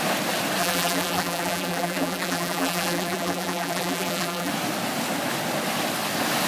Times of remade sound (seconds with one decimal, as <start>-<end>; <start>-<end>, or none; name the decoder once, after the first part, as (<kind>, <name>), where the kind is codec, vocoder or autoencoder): 0.6-4.5 (vocoder, BigVGAN v2)